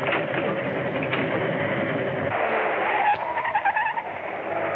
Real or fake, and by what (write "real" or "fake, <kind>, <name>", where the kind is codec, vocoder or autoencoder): real